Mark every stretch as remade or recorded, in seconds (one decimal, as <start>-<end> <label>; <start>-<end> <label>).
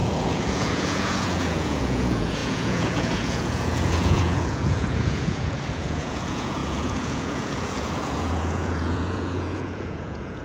0.0-10.4 remade